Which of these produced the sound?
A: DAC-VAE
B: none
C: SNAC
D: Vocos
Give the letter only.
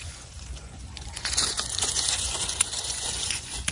D